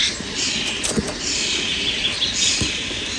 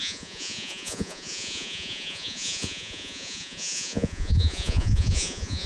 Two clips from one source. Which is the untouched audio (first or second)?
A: first